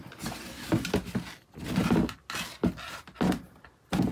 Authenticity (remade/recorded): recorded